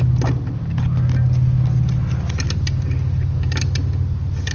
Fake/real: real